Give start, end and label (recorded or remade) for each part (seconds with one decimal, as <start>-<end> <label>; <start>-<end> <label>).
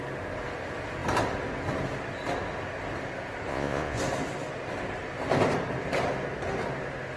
0.0-3.5 recorded; 3.5-4.0 remade; 4.0-7.2 recorded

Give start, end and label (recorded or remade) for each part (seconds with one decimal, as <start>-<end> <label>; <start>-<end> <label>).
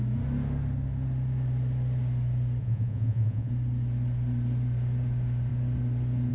0.0-2.6 recorded; 2.6-3.5 remade; 3.5-6.3 recorded